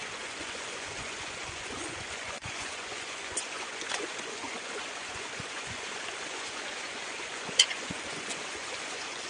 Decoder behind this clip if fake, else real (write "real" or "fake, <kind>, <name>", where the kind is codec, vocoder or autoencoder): fake, vocoder, Vocos